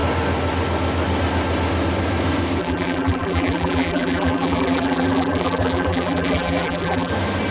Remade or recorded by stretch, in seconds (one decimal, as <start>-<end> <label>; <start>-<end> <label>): 0.0-2.6 recorded; 2.6-7.1 remade; 7.1-7.5 recorded